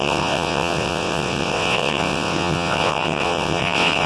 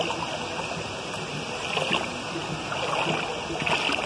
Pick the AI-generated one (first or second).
first